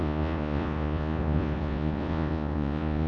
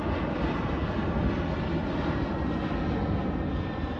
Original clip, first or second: second